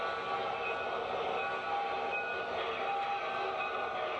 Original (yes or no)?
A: yes